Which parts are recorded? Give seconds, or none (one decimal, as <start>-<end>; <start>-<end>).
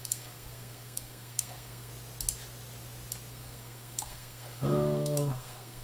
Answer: 1.9-3.3